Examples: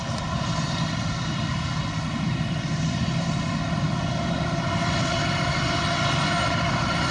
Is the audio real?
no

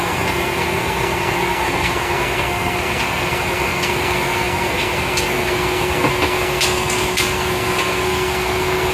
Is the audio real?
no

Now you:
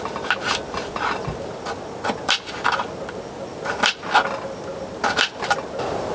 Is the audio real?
yes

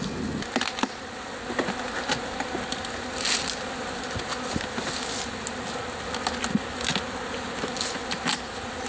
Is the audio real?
yes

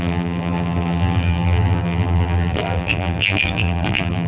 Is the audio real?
no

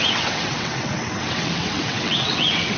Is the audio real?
no